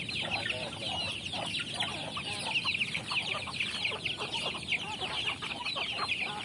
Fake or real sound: real